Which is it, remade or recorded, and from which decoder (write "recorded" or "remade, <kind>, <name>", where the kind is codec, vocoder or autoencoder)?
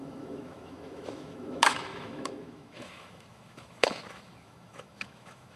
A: remade, autoencoder, DAC-VAE